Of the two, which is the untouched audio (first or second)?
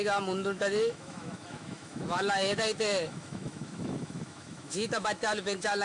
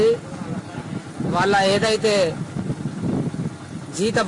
second